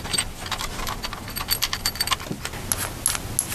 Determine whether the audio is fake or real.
real